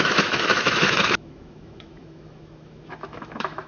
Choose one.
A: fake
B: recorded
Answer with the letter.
A